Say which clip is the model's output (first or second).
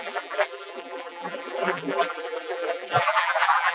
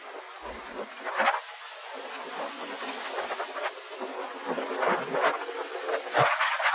first